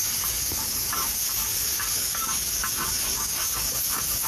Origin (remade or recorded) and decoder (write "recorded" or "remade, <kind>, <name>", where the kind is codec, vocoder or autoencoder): remade, codec, DAC